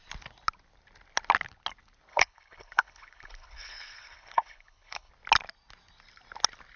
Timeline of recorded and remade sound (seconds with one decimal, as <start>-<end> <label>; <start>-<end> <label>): 0.0-2.1 recorded; 2.1-5.1 remade; 5.1-6.8 recorded